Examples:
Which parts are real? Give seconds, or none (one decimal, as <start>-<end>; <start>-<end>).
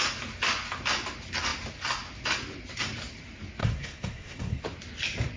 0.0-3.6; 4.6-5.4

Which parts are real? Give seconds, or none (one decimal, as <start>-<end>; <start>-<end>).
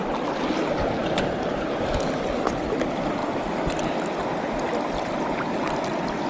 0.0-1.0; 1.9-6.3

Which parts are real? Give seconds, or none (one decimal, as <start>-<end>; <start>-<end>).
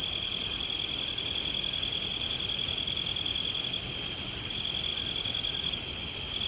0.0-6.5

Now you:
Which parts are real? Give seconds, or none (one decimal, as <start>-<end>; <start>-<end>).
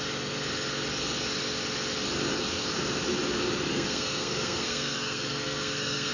0.0-3.7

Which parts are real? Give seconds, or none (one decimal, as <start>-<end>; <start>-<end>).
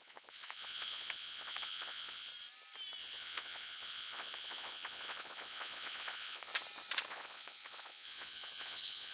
2.3-3.0; 6.5-7.1